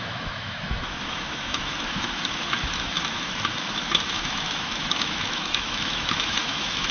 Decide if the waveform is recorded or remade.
remade